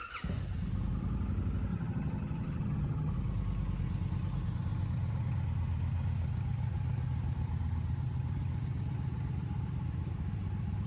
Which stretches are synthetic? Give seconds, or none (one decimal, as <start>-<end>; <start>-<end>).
1.7-3.1